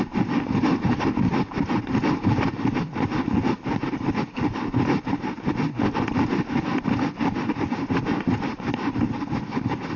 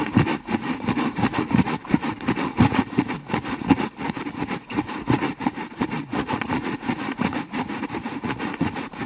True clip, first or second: first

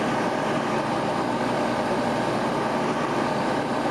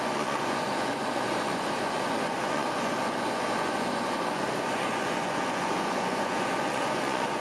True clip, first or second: first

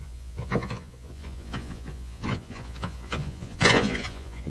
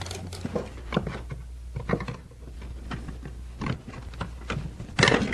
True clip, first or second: second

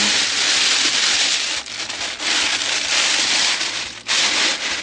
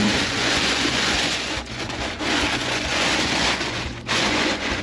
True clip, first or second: first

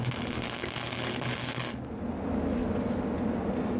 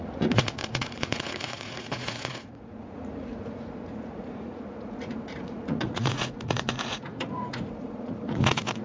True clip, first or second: first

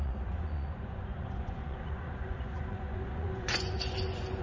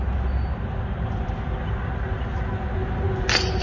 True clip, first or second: second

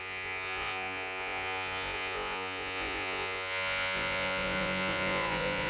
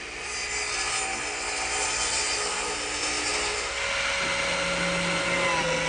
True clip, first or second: second